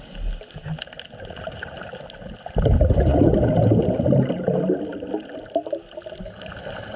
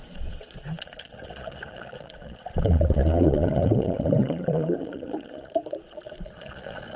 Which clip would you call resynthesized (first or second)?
second